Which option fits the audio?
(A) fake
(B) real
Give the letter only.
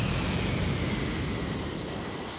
B